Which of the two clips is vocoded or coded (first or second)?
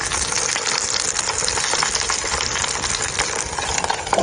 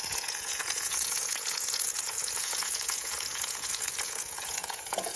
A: second